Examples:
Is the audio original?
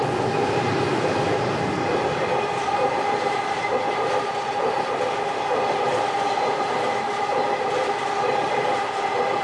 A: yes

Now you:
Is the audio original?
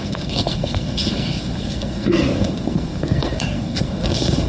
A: no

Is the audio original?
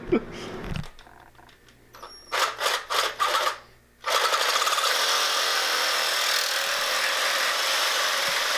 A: yes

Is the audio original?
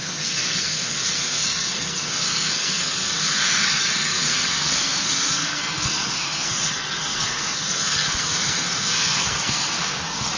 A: no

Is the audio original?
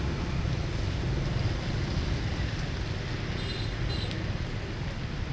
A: yes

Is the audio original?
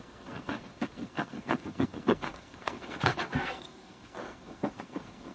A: no